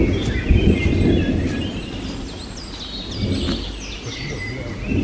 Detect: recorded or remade recorded